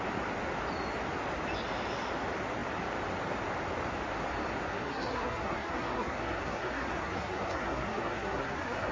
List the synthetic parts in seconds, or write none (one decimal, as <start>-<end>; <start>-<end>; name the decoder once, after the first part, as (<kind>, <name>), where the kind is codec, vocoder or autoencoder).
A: 4.7-8.9 (codec, SNAC)